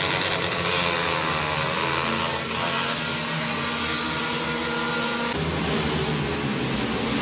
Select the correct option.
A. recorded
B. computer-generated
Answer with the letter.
A